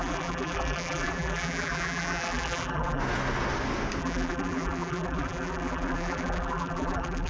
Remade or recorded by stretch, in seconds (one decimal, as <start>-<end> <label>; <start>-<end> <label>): 0.0-3.0 remade; 3.0-4.0 recorded; 4.0-7.3 remade